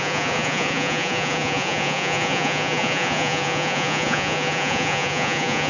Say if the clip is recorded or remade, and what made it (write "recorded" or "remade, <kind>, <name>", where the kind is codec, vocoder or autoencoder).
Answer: remade, vocoder, Vocos